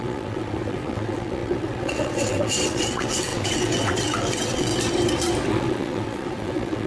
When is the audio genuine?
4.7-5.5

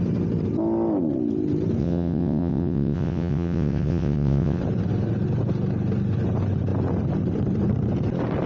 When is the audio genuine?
0.0-1.8; 4.6-8.5

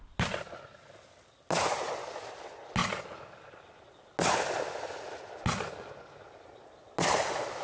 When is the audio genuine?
0.0-7.6

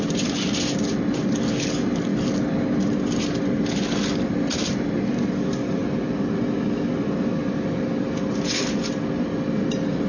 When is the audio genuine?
0.0-10.1